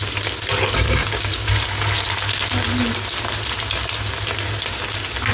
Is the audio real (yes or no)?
yes